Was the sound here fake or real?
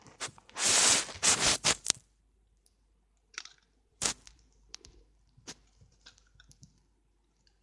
fake